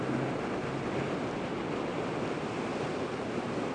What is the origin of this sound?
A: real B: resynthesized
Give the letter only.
A